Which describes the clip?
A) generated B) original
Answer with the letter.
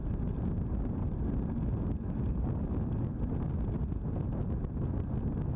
B